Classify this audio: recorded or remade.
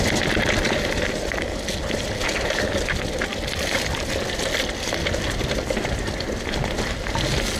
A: recorded